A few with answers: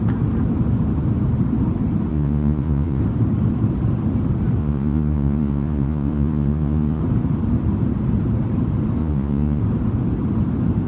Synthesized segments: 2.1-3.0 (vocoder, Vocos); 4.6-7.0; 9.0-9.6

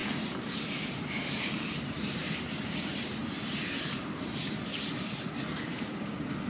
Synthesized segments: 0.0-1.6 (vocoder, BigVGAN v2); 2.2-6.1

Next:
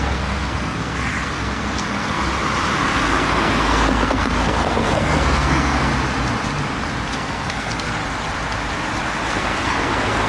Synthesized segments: 0.0-2.2 (codec, SNAC); 2.8-5.9; 7.1-8.0; 9.3-10.3